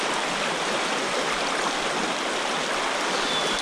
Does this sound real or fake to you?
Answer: real